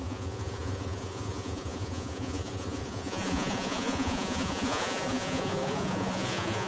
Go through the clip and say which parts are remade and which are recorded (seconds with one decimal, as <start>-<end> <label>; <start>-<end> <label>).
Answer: 0.0-6.7 remade